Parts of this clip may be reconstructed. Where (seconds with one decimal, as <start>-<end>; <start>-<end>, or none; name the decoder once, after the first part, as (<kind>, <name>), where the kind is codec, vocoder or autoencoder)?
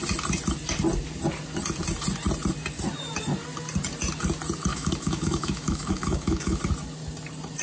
4.7-6.6 (autoencoder, DAC-VAE)